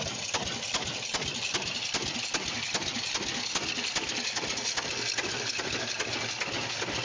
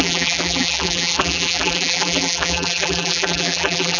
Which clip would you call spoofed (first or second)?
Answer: second